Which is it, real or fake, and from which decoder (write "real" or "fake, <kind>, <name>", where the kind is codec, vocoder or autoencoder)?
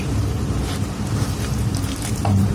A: fake, vocoder, BigVGAN v2